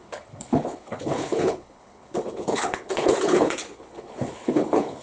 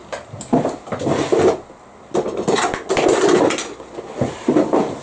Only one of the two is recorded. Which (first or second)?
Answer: second